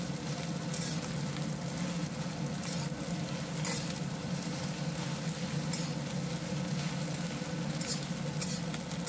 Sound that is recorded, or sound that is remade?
recorded